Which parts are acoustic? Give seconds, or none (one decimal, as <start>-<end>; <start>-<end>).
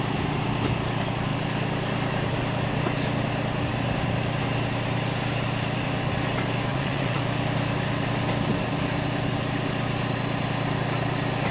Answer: 0.0-6.7; 7.2-11.5